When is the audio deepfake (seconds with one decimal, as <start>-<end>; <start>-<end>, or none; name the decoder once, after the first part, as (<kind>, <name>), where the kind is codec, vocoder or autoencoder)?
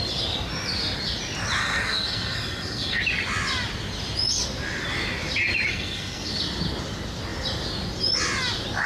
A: 1.6-3.0 (codec, SNAC); 5.7-6.3